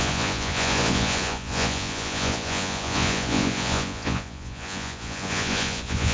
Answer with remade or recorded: remade